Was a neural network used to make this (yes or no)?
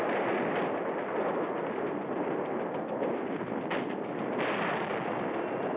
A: no